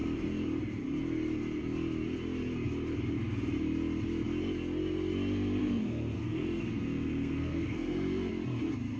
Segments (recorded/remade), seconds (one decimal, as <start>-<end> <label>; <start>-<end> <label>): 0.0-5.6 recorded; 5.6-8.3 remade; 8.3-9.0 recorded